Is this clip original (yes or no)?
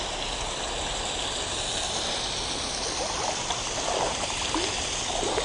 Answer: yes